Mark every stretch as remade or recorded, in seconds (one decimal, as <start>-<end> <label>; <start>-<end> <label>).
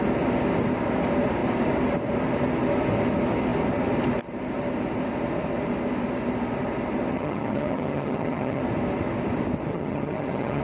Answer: 0.0-7.1 recorded; 7.1-8.6 remade; 8.6-9.7 recorded; 9.7-10.6 remade